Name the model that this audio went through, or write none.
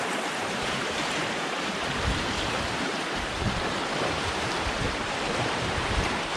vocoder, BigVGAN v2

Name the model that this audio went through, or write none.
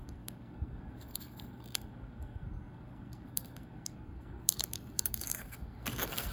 codec, SNAC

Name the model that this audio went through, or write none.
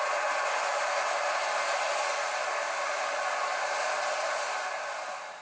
none